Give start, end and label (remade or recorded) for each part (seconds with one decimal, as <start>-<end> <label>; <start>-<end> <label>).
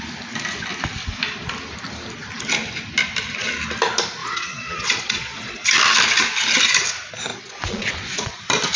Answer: 0.0-4.2 recorded; 4.2-5.7 remade; 5.7-7.3 recorded; 7.3-8.4 remade; 8.4-8.8 recorded